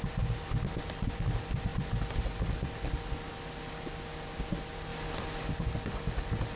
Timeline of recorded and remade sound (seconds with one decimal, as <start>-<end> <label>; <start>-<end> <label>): 0.0-6.6 recorded